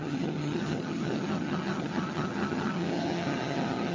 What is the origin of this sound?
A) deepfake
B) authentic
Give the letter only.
A